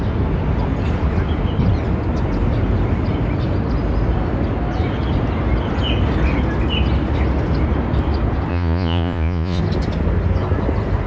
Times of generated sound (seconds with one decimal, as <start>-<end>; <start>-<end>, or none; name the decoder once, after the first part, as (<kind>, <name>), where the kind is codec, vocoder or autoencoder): 8.5-9.6 (vocoder, Vocos)

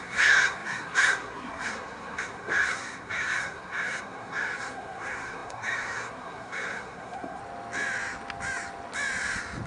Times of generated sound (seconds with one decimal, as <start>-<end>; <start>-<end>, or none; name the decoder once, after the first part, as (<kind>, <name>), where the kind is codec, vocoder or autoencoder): 0.0-7.4 (codec, SNAC)

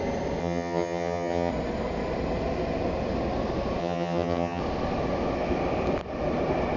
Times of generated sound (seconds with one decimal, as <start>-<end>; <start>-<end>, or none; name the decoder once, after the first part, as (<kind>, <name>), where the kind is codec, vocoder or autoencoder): 0.4-1.5 (vocoder, HiFi-GAN); 3.8-4.6

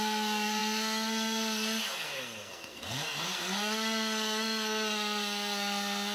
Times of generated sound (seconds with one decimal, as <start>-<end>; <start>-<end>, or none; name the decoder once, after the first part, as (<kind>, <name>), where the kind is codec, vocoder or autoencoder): 0.0-6.1 (codec, SNAC)

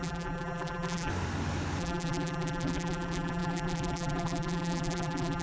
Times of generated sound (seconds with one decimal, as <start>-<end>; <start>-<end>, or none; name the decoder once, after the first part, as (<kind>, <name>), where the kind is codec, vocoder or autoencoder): 0.0-1.1 (vocoder, BigVGAN v2); 1.8-5.4

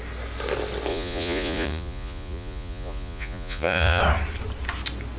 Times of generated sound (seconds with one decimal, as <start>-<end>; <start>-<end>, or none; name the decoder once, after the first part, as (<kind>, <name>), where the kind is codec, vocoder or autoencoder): 0.9-4.0 (vocoder, Vocos)

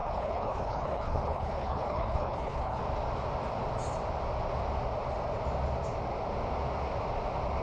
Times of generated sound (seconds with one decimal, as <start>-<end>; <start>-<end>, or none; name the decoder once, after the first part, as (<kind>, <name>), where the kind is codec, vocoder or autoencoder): 0.0-2.8 (codec, HILCodec)

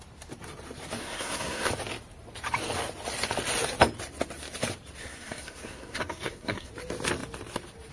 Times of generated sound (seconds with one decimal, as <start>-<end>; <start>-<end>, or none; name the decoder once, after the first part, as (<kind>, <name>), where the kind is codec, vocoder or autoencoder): 1.0-1.7 (codec, SNAC); 5.0-6.7